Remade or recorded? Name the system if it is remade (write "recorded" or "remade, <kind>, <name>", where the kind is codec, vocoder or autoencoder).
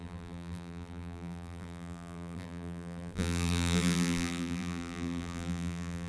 remade, vocoder, BigVGAN v2